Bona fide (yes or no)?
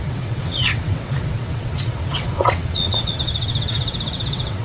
no